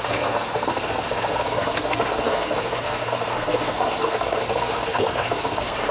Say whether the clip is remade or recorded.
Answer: remade